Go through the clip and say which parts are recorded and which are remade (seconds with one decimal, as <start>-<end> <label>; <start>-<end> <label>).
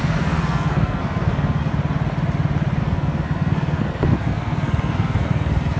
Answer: 0.0-1.7 remade; 1.7-2.8 recorded; 2.8-5.8 remade